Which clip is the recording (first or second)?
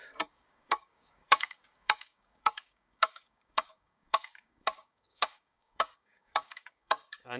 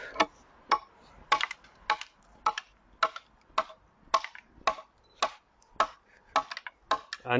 second